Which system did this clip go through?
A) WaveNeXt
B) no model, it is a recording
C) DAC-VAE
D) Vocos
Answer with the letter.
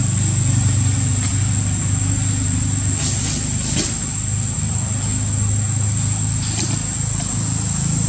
B